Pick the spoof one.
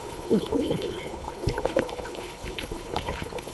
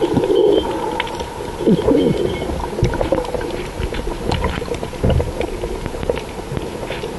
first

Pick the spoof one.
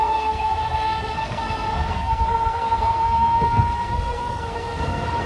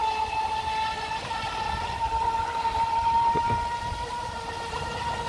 first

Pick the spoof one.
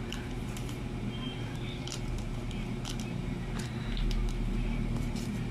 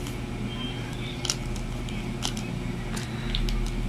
first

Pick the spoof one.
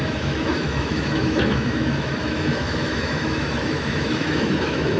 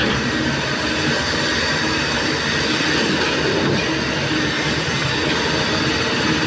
first